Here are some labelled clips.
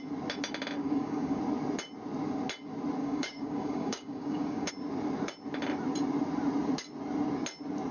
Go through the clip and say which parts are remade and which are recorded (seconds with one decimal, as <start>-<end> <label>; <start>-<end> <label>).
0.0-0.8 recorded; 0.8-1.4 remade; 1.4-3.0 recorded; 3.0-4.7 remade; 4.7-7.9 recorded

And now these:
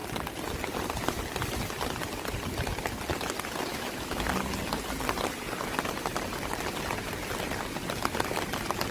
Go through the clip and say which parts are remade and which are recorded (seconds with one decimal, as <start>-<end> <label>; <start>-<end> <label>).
0.0-3.7 recorded; 3.7-4.3 remade; 4.3-8.9 recorded

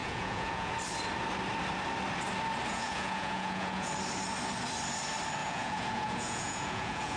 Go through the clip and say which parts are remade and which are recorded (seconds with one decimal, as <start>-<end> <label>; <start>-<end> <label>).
0.0-0.7 remade; 0.7-2.7 recorded; 2.7-3.9 remade; 3.9-5.4 recorded; 5.4-7.2 remade

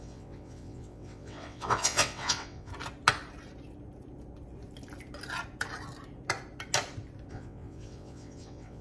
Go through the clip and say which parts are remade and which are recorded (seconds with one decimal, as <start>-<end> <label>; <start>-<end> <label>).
0.0-2.7 remade; 2.7-7.3 recorded; 7.3-8.8 remade

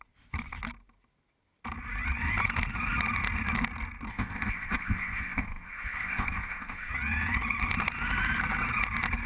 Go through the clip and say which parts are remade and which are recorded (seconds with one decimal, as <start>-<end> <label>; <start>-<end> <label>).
0.0-4.1 recorded; 4.1-6.9 remade; 6.9-9.3 recorded

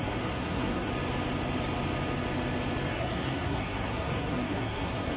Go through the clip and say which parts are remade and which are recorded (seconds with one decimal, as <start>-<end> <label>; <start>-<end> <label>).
0.0-0.9 remade; 0.9-2.9 recorded; 2.9-5.2 remade

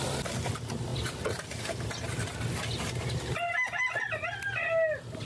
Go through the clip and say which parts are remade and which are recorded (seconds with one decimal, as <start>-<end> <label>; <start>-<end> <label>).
0.0-5.3 recorded